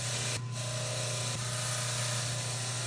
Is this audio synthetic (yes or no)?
no